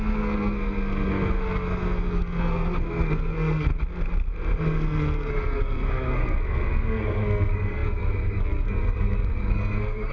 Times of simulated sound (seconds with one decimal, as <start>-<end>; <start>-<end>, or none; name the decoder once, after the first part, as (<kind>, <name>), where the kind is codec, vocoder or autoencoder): 0.0-3.7 (codec, SNAC); 4.6-10.1